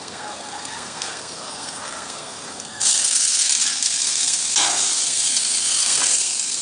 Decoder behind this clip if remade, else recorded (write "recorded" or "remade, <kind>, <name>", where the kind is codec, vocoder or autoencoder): remade, codec, SNAC